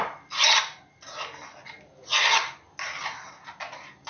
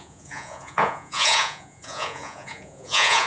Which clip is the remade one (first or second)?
second